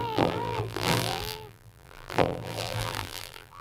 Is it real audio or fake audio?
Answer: fake